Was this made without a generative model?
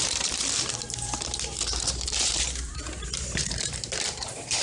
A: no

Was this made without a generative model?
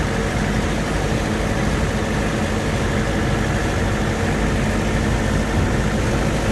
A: yes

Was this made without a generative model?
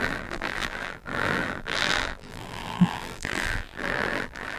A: no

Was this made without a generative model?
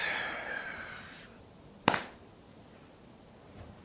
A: no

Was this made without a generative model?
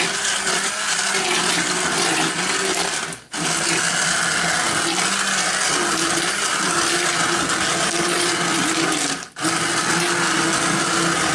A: yes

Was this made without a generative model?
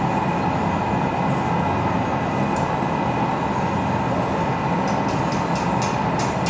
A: yes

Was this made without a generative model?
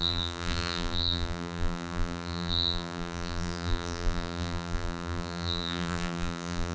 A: no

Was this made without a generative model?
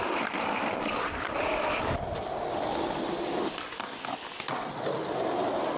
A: yes